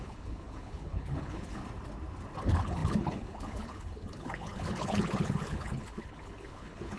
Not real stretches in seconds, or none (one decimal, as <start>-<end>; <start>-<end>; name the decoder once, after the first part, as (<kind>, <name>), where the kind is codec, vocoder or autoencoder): 0.0-1.6 (codec, HILCodec); 2.4-7.0